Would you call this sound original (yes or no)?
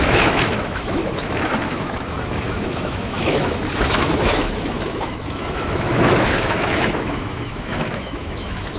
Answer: no